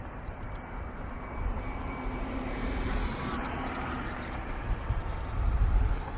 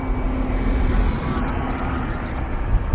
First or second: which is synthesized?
first